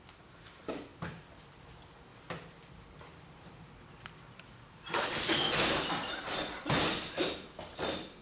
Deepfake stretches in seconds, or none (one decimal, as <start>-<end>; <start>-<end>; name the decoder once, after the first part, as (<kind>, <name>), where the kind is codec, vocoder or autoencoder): 0.9-1.7 (vocoder, BigVGAN v2); 2.1-6.8